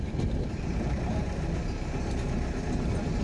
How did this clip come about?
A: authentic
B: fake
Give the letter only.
A